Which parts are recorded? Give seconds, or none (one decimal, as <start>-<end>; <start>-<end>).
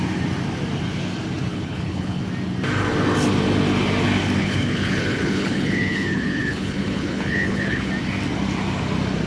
0.0-1.5; 2.2-4.4; 7.9-9.3